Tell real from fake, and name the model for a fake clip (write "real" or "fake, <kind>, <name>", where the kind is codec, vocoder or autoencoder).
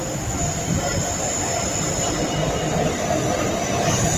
real